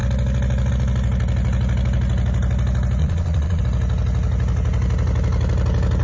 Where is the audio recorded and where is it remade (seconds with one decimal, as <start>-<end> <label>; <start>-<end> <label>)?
0.0-3.0 recorded; 3.0-3.6 remade; 3.6-6.0 recorded

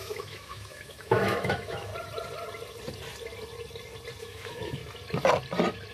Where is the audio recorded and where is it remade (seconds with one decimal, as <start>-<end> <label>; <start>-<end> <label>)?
0.0-1.9 remade; 1.9-4.2 recorded; 4.2-4.8 remade; 4.8-5.9 recorded

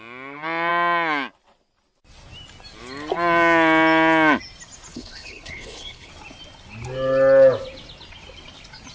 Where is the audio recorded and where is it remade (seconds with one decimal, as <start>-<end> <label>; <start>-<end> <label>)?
0.0-4.9 recorded; 4.9-6.1 remade; 6.1-8.9 recorded

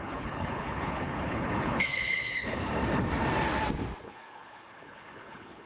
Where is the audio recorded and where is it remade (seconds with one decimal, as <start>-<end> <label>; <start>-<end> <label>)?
0.0-2.8 remade; 2.8-4.0 recorded; 4.0-5.7 remade

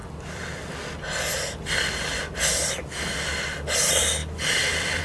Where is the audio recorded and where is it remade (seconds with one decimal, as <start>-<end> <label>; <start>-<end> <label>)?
0.0-5.0 recorded

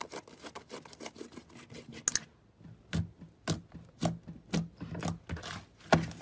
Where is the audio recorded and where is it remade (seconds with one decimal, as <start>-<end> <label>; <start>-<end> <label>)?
0.0-6.2 recorded

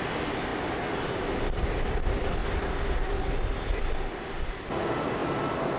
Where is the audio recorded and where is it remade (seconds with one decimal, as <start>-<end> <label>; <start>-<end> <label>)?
0.0-5.8 recorded